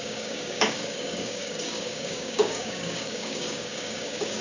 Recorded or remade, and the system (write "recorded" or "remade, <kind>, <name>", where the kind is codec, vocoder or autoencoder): remade, codec, DAC